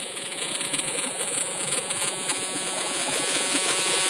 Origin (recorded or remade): remade